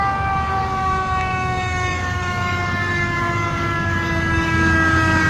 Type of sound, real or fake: fake